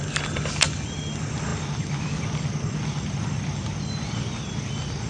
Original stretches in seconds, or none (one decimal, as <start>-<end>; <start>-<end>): 0.0-5.1